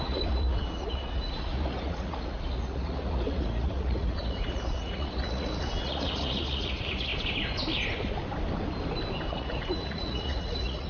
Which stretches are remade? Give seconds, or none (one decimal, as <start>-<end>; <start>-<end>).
0.0-7.1; 9.3-10.9